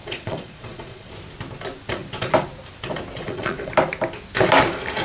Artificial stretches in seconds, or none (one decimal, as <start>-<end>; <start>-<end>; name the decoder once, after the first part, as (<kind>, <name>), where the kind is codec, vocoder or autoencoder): 0.0-1.1 (vocoder, Vocos); 3.2-3.7